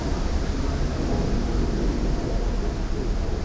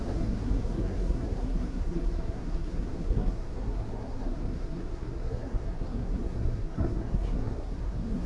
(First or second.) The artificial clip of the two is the second